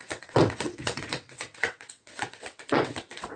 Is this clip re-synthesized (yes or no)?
yes